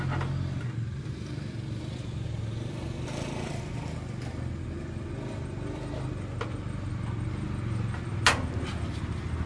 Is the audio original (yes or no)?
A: yes